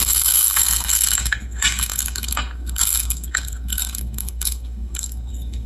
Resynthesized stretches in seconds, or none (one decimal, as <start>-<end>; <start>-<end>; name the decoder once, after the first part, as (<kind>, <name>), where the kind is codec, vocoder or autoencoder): 0.0-5.7 (codec, SNAC)